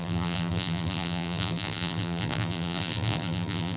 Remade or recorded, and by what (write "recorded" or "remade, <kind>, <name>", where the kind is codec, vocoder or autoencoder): remade, vocoder, BigVGAN v2